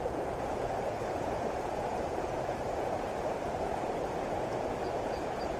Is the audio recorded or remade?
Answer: remade